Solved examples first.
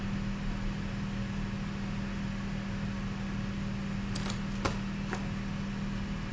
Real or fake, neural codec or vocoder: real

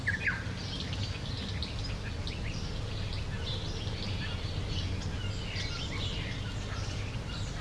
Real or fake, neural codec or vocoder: real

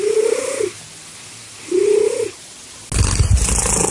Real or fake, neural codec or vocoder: real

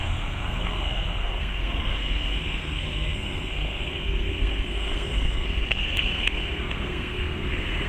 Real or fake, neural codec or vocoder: fake, codec, SNAC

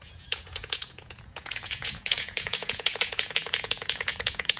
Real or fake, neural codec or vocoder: fake, vocoder, Vocos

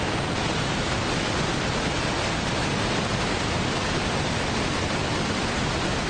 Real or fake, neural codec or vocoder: real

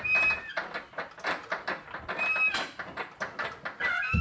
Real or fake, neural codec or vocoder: real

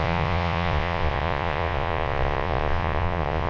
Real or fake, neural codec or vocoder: fake, vocoder, Vocos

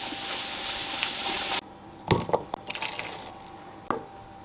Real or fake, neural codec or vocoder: real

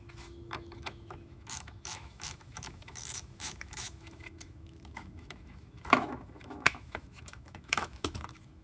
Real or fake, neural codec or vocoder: fake, autoencoder, DAC-VAE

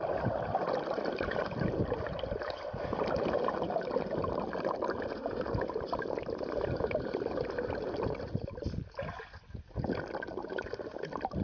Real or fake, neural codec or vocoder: real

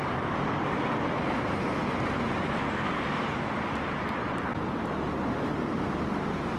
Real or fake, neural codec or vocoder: real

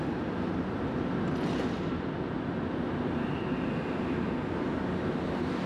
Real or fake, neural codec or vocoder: real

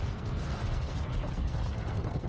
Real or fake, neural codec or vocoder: fake, codec, SNAC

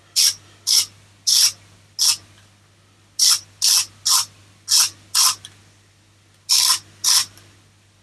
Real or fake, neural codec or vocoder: real